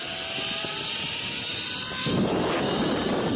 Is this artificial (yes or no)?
no